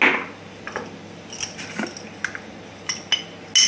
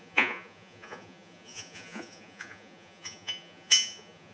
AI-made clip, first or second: second